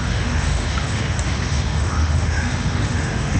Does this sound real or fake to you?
fake